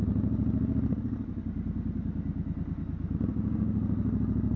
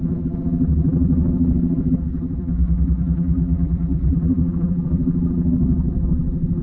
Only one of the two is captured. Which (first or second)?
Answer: first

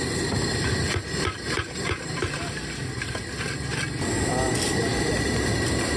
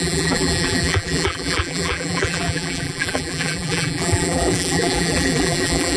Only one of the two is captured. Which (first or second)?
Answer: first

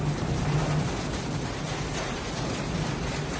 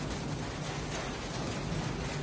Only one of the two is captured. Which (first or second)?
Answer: second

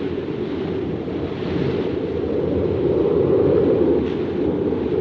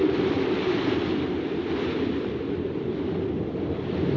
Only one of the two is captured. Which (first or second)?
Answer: first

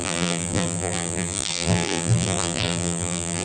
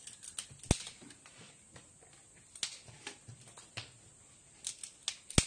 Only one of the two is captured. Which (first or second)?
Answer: second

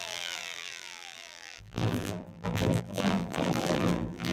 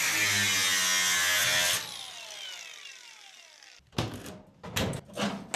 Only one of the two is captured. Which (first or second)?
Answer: second